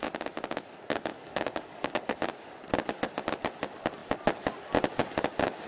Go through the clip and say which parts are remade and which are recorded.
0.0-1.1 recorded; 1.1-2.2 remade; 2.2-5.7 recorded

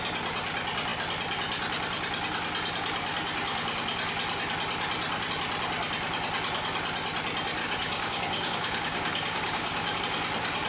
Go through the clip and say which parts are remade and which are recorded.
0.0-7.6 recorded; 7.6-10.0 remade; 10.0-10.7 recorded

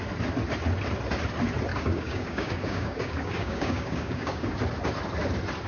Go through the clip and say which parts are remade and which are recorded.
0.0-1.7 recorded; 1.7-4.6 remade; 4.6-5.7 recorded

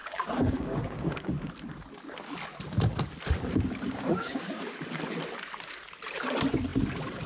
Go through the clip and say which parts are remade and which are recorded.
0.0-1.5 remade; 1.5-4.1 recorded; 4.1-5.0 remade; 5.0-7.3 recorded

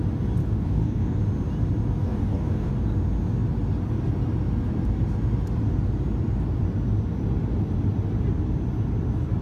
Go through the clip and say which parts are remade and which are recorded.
0.0-0.4 recorded; 0.4-1.2 remade; 1.2-2.0 recorded; 2.0-2.7 remade; 2.7-9.4 recorded

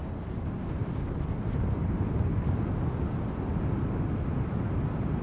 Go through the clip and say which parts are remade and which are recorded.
0.0-5.2 recorded

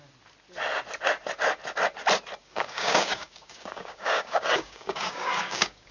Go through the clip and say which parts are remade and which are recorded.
0.0-2.4 recorded; 2.4-5.9 remade